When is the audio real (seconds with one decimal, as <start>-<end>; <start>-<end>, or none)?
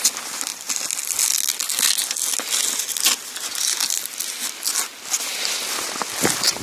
0.0-6.6